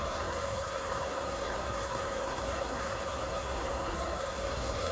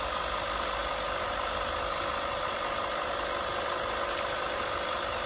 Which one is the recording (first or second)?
second